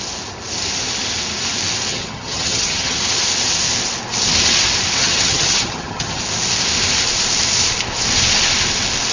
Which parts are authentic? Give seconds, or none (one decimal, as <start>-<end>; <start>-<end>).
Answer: 0.0-1.9; 3.0-5.0; 6.2-9.1